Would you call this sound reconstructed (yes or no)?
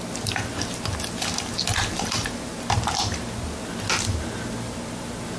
no